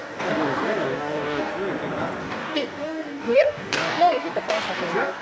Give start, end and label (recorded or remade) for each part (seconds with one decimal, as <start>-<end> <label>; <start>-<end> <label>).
0.0-1.5 remade; 1.5-2.2 recorded; 2.2-5.2 remade